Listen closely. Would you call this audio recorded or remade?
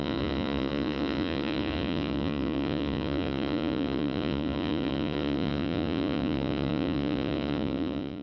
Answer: remade